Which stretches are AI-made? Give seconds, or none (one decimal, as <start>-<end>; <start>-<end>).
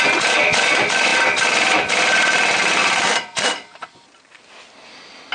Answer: none